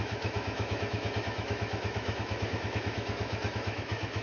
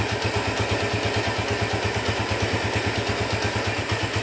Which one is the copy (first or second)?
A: first